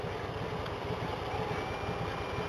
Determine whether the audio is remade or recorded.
recorded